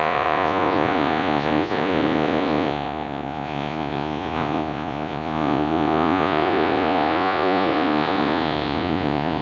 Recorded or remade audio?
remade